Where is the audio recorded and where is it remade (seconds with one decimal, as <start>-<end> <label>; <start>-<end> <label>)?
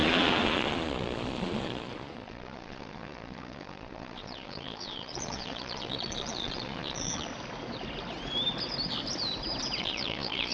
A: 0.0-7.3 remade; 7.3-9.8 recorded; 9.8-10.5 remade